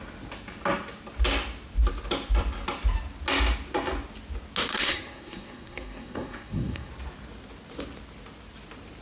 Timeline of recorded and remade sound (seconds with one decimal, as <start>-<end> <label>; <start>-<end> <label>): 0.0-4.7 recorded; 4.7-6.9 remade; 6.9-9.0 recorded